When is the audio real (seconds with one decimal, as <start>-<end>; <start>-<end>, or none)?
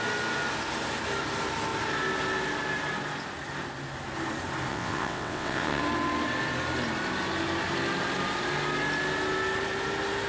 0.0-4.7; 5.8-10.3